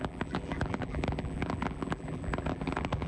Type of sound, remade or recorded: remade